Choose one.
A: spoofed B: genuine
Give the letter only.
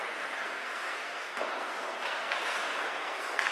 A